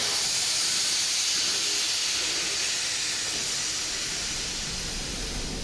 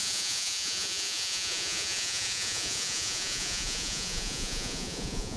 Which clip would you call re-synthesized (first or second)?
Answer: second